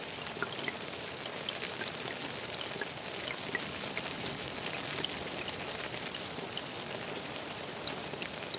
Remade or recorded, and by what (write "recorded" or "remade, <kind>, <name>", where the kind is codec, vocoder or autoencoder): remade, vocoder, BigVGAN v2